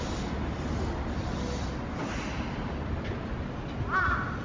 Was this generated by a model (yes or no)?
no